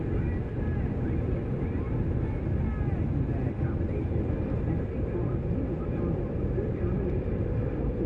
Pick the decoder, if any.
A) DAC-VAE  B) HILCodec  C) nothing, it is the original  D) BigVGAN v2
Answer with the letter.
C